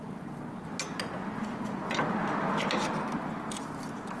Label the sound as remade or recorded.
recorded